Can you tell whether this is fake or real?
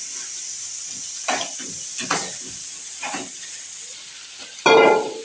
real